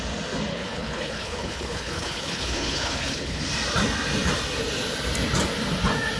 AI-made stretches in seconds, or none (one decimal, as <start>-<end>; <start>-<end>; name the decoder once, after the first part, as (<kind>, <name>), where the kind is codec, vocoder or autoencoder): 0.5-3.4 (codec, HILCodec)